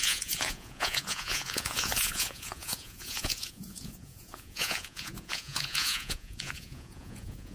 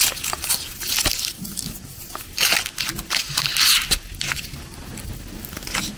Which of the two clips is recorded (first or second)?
second